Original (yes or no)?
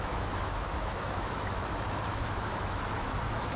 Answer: no